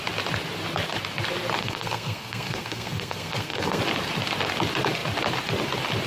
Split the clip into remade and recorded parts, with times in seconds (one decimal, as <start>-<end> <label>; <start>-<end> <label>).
0.0-1.6 recorded; 1.6-3.8 remade; 3.8-6.1 recorded